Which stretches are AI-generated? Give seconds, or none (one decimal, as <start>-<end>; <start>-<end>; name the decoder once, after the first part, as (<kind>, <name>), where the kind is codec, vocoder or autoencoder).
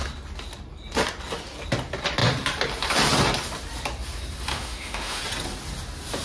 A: 4.5-5.2 (autoencoder, DAC-VAE)